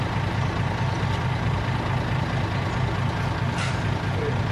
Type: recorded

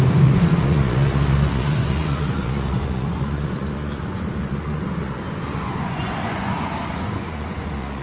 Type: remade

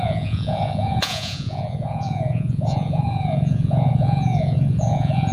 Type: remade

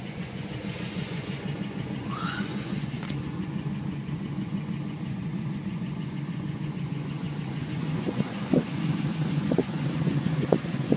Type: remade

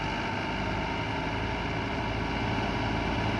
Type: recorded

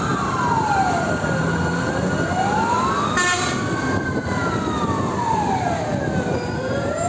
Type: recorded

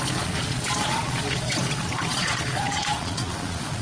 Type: remade